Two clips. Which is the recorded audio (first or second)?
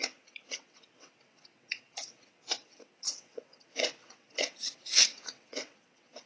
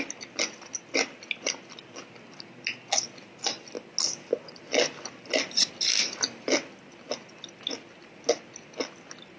second